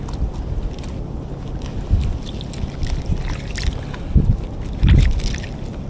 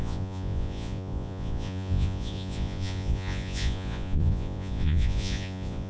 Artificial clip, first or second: second